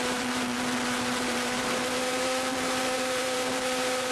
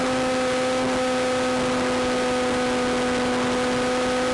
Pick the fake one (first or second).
first